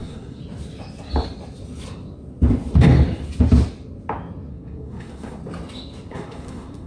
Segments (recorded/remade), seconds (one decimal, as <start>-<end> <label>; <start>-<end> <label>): 0.0-0.4 remade; 0.4-4.5 recorded; 4.5-5.4 remade; 5.4-6.1 recorded; 6.1-6.9 remade